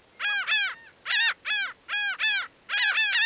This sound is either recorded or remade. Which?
recorded